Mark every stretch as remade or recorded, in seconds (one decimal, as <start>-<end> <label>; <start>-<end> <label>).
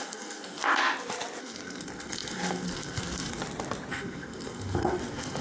0.0-0.6 remade; 0.6-1.4 recorded; 1.4-3.4 remade; 3.4-3.9 recorded; 3.9-5.4 remade